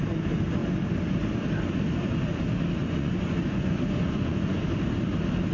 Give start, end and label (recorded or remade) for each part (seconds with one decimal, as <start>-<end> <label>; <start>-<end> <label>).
0.0-2.8 recorded; 2.8-4.6 remade; 4.6-5.5 recorded